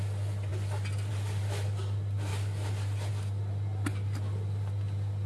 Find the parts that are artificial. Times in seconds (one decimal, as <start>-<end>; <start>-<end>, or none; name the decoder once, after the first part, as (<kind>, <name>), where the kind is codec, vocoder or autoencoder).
none